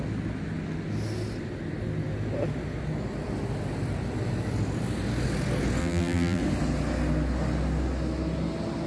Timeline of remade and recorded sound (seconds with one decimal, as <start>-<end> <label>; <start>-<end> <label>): 0.0-5.8 recorded; 5.8-6.4 remade; 6.4-8.9 recorded